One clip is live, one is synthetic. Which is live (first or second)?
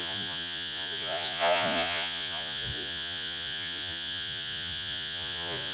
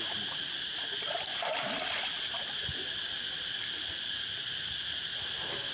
second